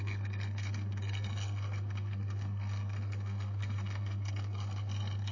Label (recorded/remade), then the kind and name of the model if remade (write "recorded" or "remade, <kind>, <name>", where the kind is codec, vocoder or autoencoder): remade, codec, SNAC